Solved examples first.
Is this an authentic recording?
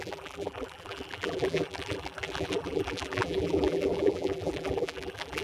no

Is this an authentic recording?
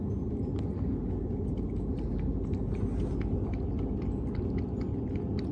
yes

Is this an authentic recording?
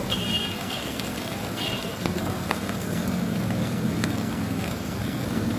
no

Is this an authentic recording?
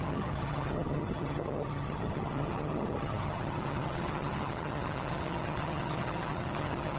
no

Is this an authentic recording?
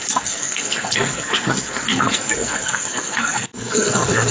no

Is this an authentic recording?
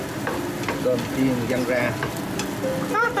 yes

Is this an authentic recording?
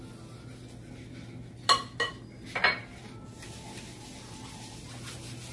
yes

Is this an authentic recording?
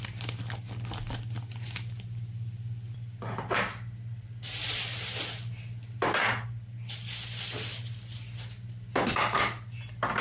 yes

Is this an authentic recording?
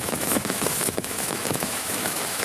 no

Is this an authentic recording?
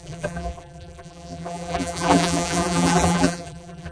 no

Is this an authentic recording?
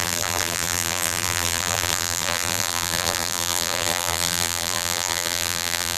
no